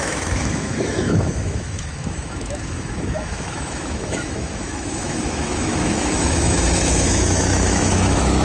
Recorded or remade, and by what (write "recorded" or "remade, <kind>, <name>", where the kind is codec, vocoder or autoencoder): remade, autoencoder, DAC-VAE